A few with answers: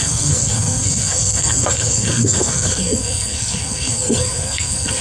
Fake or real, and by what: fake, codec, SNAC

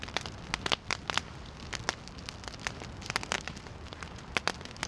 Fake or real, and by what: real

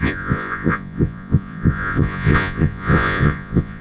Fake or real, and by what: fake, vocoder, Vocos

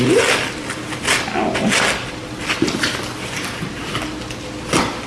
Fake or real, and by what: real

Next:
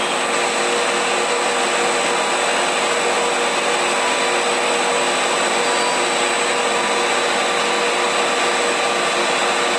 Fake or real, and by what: real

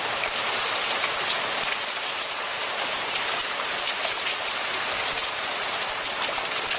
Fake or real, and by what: fake, vocoder, BigVGAN v2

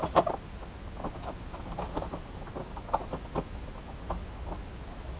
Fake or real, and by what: real